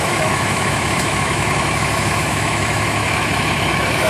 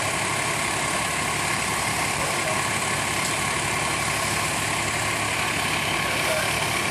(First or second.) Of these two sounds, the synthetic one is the first